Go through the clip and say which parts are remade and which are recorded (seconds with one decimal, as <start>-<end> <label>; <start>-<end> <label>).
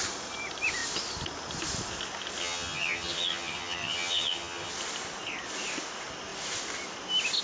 0.0-2.4 recorded; 2.4-4.7 remade; 4.7-7.4 recorded